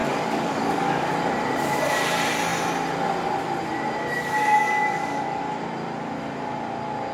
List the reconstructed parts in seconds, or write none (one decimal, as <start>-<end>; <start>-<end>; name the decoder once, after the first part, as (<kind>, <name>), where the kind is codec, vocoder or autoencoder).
0.0-1.1 (codec, DAC); 4.6-5.4